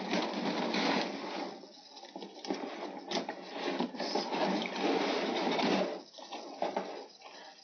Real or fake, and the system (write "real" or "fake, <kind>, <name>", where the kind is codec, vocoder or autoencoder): real